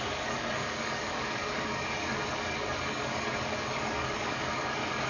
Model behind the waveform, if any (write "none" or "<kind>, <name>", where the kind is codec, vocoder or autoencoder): codec, DAC